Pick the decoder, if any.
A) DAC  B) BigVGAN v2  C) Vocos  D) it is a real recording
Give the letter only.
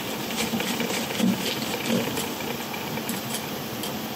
D